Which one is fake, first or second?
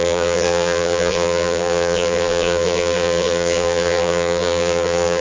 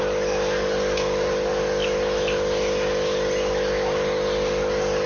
first